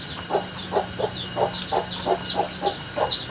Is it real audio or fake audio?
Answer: real